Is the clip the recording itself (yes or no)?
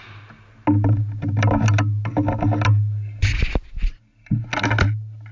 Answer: yes